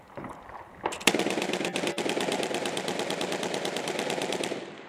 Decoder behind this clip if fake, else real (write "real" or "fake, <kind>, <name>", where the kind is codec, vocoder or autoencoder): fake, vocoder, BigVGAN v2